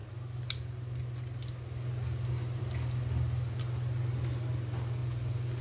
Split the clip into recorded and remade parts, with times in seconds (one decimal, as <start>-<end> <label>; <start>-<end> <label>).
0.0-5.6 recorded